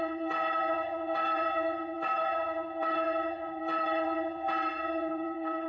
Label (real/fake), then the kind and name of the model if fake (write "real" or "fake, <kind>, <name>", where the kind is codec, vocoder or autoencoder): fake, vocoder, WaveNeXt